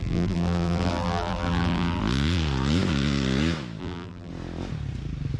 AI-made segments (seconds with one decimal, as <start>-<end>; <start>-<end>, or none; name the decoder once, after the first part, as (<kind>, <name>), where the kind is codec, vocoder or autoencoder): 0.0-2.0 (vocoder, BigVGAN v2); 3.8-4.3

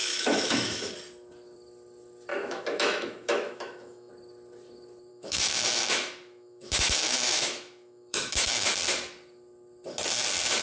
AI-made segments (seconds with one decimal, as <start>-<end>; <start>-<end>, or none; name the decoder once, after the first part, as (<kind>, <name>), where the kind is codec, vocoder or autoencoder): 0.0-0.9 (autoencoder, DAC-VAE); 2.3-4.1; 5.1-8.7

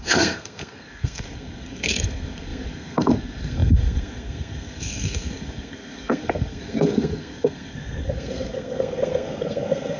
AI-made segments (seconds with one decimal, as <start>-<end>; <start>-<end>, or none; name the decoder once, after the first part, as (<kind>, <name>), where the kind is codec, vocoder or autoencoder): 0.0-10.0 (codec, SNAC)

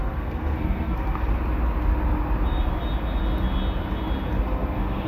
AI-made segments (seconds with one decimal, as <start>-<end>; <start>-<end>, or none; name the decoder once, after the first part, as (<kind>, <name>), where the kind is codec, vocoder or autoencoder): 0.0-1.3 (codec, SNAC); 4.4-5.1